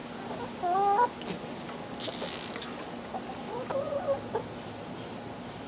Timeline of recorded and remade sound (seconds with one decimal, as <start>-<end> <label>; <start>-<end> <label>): 0.0-5.7 recorded